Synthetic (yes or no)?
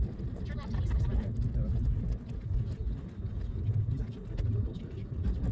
no